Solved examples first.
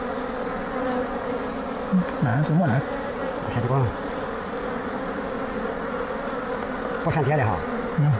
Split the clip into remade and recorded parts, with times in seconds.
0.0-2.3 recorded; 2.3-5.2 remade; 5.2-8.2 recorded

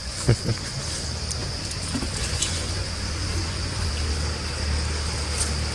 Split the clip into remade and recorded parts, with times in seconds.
0.0-0.7 remade; 0.7-1.4 recorded; 1.4-3.9 remade; 3.9-5.7 recorded